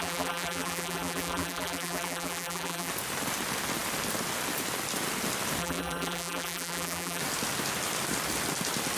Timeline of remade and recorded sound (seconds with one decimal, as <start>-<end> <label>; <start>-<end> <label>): 0.0-2.9 remade; 2.9-5.6 recorded; 5.6-7.2 remade; 7.2-9.0 recorded